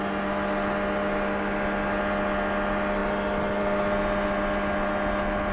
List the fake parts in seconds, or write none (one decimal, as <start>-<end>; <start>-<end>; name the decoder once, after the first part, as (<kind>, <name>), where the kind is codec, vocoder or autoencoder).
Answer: none